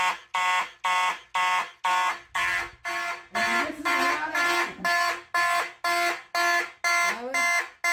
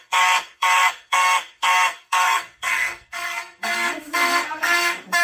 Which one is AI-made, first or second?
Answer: second